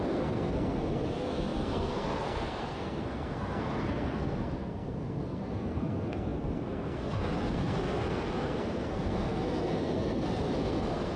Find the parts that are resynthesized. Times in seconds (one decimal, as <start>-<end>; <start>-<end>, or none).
0.0-11.2